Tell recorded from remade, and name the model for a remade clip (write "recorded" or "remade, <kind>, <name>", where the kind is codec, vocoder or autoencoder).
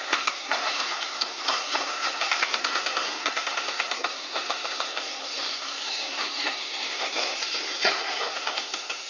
remade, codec, SNAC